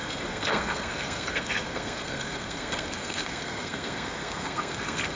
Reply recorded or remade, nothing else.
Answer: remade